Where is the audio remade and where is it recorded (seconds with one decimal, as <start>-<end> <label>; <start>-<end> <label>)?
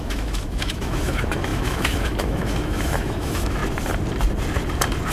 0.0-3.6 remade; 3.6-5.1 recorded